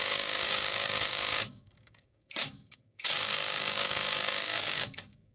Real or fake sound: fake